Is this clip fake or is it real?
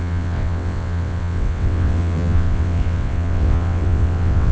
fake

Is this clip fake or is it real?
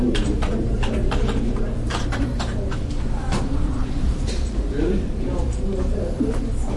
fake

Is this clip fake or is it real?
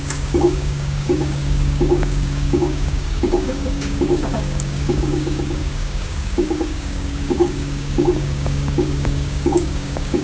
fake